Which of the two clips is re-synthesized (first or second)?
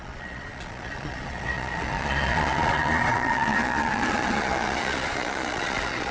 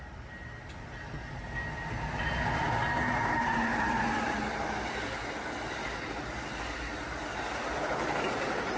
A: first